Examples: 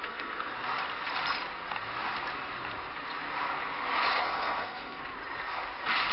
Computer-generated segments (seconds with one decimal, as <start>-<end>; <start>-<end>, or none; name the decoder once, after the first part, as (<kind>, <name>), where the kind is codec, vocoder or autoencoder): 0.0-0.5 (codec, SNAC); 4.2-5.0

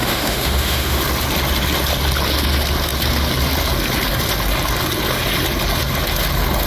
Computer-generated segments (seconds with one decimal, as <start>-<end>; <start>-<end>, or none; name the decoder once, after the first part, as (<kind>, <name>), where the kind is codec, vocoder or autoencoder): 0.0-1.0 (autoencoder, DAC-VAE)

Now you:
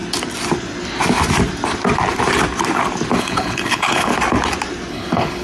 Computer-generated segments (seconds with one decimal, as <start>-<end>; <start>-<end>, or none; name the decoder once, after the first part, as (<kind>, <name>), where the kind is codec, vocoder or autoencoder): 3.2-4.1 (codec, HILCodec); 4.9-5.4

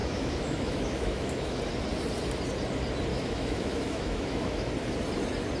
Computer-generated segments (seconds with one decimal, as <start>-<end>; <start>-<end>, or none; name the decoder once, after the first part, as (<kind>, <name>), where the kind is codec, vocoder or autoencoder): 0.0-1.6 (autoencoder, DAC-VAE); 3.1-4.7

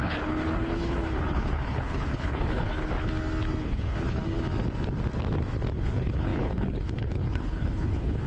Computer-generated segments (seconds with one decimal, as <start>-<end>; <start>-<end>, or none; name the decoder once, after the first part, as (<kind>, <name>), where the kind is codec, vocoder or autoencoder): 0.0-2.9 (codec, HILCodec); 3.6-4.2; 5.8-8.3

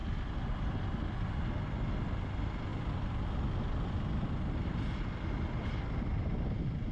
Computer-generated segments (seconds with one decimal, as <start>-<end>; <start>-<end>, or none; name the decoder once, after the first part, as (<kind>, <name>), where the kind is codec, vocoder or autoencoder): none

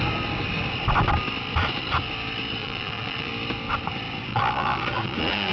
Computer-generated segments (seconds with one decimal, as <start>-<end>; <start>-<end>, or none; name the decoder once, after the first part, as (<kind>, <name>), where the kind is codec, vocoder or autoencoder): 2.6-3.3 (vocoder, Vocos); 4.3-5.5